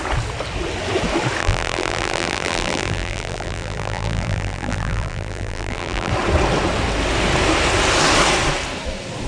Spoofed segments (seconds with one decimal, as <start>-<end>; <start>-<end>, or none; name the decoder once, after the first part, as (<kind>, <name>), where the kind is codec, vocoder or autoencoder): 1.4-6.1 (vocoder, BigVGAN v2)